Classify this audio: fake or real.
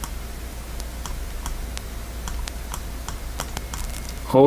real